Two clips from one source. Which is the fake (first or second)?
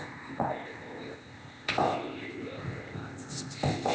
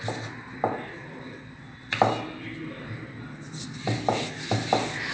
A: first